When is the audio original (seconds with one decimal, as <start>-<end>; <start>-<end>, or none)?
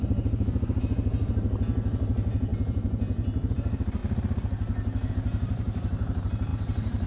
4.0-5.1